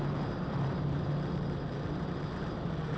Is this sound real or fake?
fake